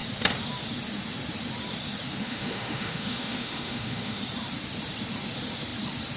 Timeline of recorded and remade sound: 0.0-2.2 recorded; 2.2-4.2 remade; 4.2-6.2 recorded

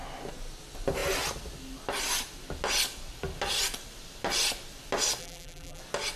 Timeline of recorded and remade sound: 0.0-5.2 recorded; 5.2-5.8 remade; 5.8-6.2 recorded